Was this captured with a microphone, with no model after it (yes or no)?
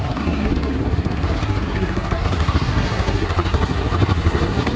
no